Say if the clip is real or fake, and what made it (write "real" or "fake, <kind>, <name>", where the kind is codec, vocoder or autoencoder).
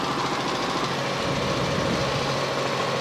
real